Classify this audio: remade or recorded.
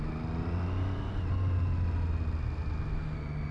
recorded